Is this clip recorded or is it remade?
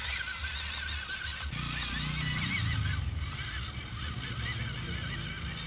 recorded